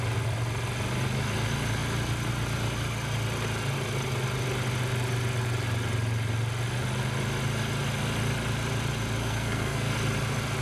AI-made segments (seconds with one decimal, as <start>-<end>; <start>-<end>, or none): 9.2-9.9